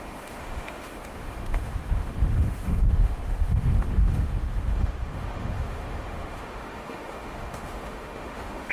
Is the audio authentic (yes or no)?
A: no